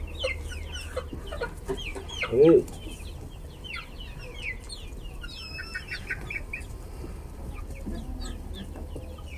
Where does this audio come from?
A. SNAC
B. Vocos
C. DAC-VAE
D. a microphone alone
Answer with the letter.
D